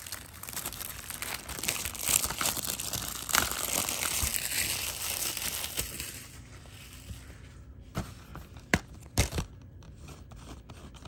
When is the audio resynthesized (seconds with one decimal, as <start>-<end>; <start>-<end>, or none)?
0.0-4.3; 6.3-11.1